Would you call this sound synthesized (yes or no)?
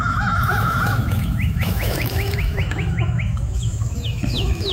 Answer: yes